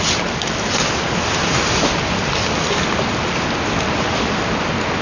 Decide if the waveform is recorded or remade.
recorded